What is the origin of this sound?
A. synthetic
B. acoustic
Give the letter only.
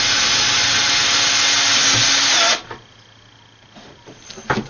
B